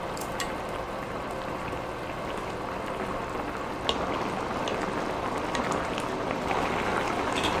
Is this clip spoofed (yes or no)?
no